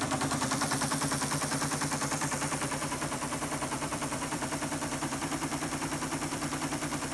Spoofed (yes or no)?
yes